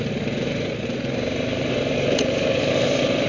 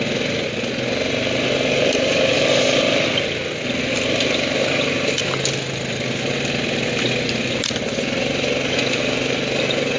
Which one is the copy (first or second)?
first